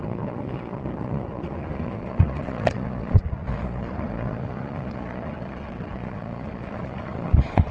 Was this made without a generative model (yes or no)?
no